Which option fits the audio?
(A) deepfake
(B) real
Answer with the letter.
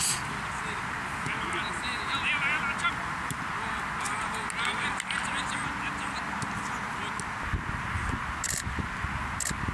B